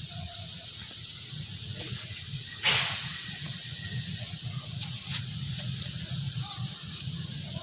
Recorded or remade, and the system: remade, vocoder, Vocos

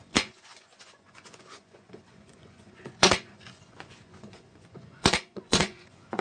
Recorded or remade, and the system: remade, vocoder, Vocos